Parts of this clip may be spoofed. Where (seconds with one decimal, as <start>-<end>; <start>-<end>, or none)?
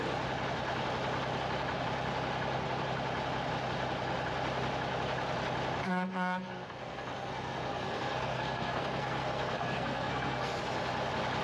5.8-10.6